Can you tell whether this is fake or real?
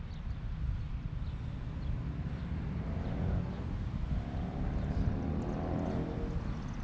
real